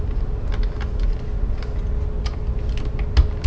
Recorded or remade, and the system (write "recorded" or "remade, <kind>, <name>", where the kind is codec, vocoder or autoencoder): recorded